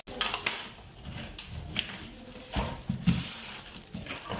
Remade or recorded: recorded